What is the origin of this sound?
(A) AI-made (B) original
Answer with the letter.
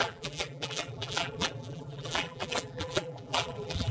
A